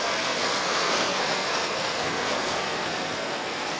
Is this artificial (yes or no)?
yes